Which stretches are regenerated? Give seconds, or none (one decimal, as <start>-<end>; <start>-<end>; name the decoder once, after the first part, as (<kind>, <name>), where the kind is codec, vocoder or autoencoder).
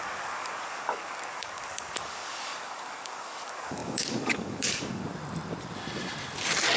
0.0-5.0 (codec, DAC)